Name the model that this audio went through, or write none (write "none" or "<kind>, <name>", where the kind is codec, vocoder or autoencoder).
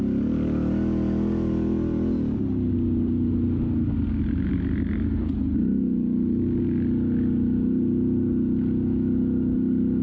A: none